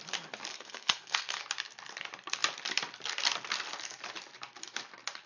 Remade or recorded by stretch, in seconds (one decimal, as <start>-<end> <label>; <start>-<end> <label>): 0.0-0.5 recorded; 0.5-1.4 remade; 1.4-5.3 recorded